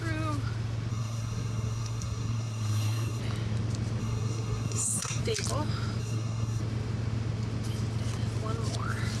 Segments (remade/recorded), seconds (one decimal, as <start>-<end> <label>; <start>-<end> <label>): 0.0-0.9 recorded; 0.9-3.2 remade; 3.2-4.0 recorded; 4.0-5.2 remade; 5.2-6.0 recorded; 6.0-6.6 remade; 6.6-9.2 recorded